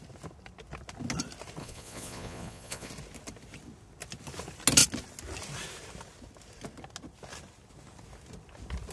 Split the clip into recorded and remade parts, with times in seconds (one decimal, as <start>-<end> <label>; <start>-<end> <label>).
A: 0.0-1.6 recorded; 1.6-2.9 remade; 2.9-8.9 recorded